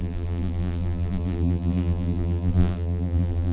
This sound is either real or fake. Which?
fake